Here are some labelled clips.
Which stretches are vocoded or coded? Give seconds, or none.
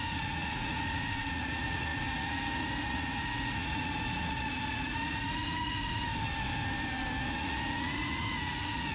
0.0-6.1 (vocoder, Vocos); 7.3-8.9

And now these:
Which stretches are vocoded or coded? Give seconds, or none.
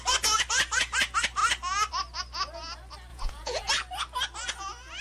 3.1-3.7 (vocoder, Vocos)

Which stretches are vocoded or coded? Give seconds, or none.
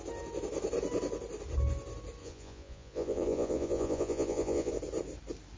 2.2-4.7 (vocoder, Vocos)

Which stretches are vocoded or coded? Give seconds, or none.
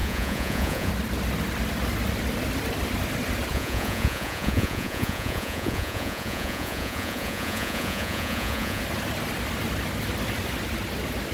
0.0-0.9 (vocoder, Vocos); 3.5-8.8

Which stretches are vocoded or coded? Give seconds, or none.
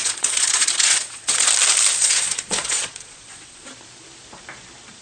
0.0-1.5 (vocoder, Vocos); 2.0-3.7